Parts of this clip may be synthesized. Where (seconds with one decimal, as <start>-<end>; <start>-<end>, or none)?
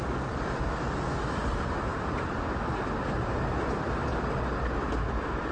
0.0-0.6; 1.2-4.1; 4.9-5.5